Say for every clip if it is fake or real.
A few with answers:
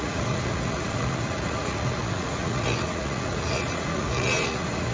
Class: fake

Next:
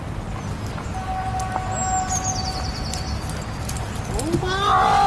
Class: real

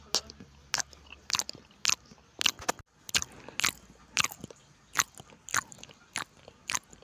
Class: real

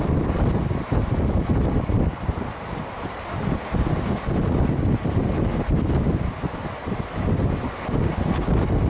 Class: real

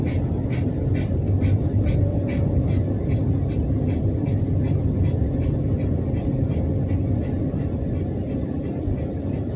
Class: real